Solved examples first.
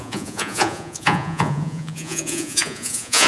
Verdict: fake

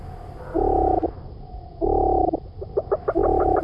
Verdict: real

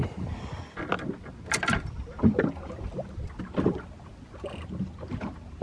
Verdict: real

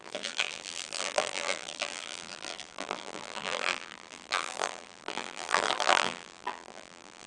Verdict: fake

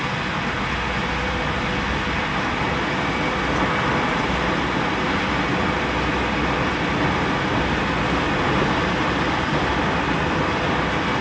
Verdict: real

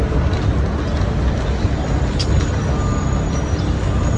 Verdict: real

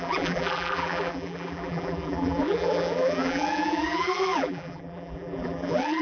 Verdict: fake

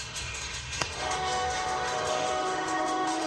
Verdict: fake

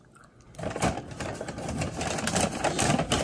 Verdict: real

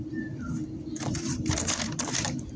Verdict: real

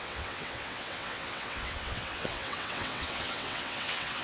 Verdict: fake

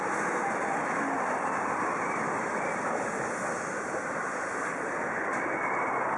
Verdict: real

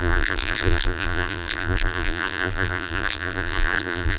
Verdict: fake